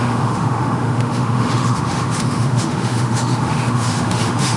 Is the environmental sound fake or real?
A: fake